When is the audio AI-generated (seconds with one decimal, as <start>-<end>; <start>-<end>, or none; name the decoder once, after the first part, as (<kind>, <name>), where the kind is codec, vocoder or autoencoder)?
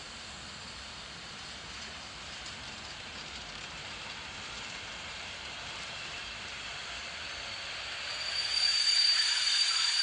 0.0-7.0 (vocoder, BigVGAN v2); 8.8-10.0